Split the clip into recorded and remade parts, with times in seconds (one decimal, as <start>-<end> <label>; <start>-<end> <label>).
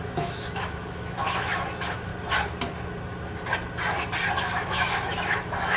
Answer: 0.0-2.1 remade; 2.1-4.4 recorded; 4.4-5.8 remade